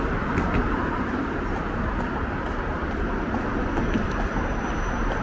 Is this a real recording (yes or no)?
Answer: yes